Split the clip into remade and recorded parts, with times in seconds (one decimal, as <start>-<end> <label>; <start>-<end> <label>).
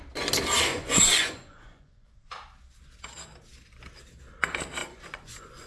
0.0-0.7 recorded; 0.7-2.3 remade; 2.3-4.8 recorded; 4.8-5.7 remade